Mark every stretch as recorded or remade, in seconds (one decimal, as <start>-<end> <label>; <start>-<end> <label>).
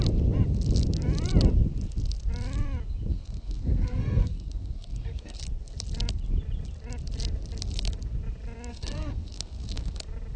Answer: 0.0-3.1 recorded; 3.1-5.4 remade; 5.4-8.7 recorded; 8.7-10.0 remade; 10.0-10.4 recorded